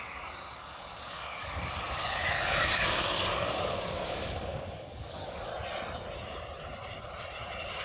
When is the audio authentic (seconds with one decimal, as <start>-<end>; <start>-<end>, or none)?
5.5-7.8